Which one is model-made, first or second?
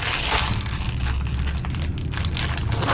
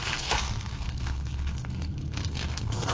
second